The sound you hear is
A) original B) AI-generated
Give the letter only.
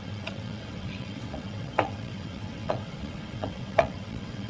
B